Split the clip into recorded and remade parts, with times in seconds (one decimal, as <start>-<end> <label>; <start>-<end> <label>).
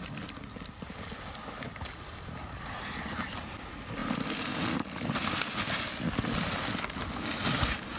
0.0-8.0 recorded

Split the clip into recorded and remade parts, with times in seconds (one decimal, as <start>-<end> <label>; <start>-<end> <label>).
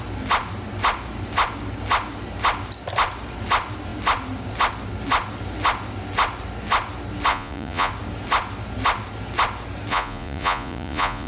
0.0-7.3 recorded; 7.3-7.9 remade; 7.9-9.9 recorded; 9.9-11.3 remade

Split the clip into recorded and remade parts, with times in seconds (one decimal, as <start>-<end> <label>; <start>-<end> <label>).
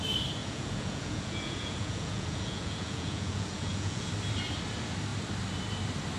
0.0-0.4 recorded; 0.4-4.1 remade; 4.1-6.2 recorded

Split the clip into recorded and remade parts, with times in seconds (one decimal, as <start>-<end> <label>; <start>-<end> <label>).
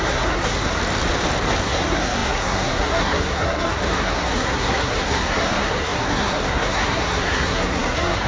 0.0-0.8 remade; 0.8-1.6 recorded; 1.6-8.3 remade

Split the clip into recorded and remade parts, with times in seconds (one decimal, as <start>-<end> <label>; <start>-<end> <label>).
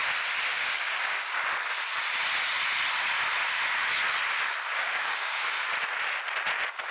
0.0-0.5 recorded; 0.5-1.4 remade; 1.4-4.7 recorded; 4.7-5.7 remade; 5.7-6.9 recorded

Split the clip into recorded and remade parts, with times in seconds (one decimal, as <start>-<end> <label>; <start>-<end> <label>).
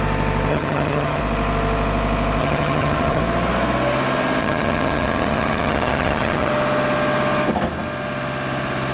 0.0-0.5 recorded; 0.5-1.2 remade; 1.2-2.4 recorded; 2.4-3.2 remade; 3.2-4.4 recorded; 4.4-6.5 remade; 6.5-8.9 recorded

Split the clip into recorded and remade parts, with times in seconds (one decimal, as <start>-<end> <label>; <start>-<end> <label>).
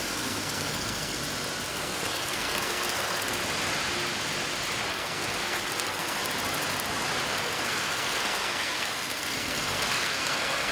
0.0-1.2 remade; 1.2-1.7 recorded; 1.7-3.4 remade; 3.4-4.9 recorded; 4.9-6.2 remade; 6.2-7.3 recorded; 7.3-10.7 remade